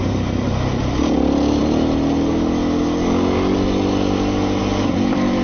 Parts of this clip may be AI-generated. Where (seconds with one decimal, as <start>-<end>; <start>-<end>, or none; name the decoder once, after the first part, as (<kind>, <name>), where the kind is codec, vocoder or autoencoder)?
none